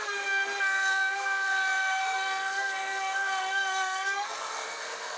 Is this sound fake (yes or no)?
yes